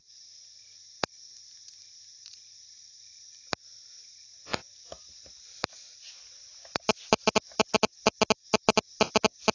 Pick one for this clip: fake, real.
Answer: real